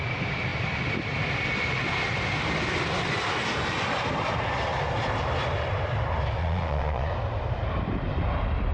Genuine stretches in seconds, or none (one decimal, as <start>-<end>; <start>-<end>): 0.0-6.4; 7.1-8.7